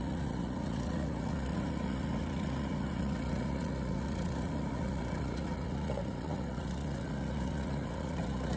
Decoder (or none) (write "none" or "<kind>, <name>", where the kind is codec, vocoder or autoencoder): vocoder, Vocos